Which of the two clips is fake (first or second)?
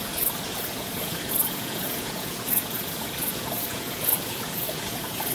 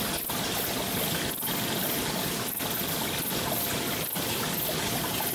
first